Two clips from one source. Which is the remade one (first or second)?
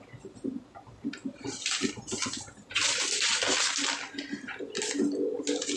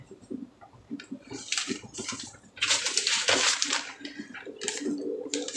second